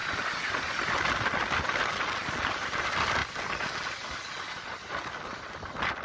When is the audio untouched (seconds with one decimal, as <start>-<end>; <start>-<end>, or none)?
0.0-6.0